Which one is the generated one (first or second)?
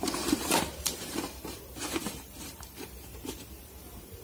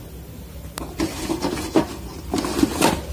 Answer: first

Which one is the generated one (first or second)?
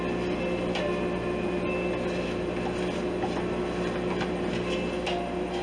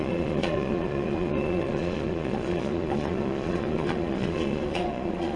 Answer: second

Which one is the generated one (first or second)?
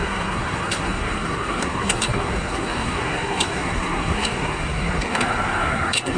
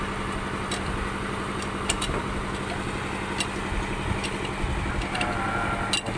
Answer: first